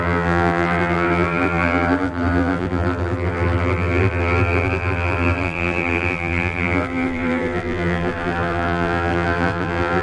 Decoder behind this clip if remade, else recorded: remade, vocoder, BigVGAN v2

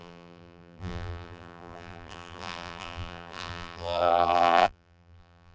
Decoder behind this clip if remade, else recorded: remade, vocoder, BigVGAN v2